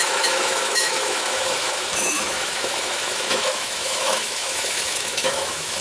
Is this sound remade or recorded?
remade